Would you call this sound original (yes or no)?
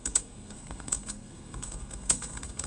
no